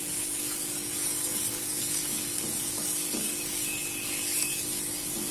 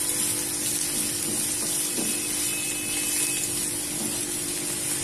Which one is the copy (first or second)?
first